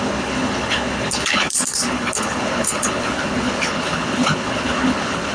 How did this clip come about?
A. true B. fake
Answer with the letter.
B